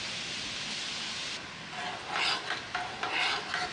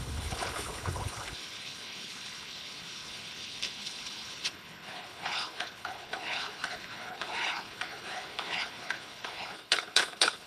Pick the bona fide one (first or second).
first